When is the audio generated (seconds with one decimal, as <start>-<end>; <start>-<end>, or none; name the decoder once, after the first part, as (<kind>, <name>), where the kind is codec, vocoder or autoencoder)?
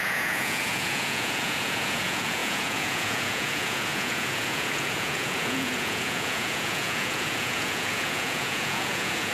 0.0-9.3 (vocoder, Vocos)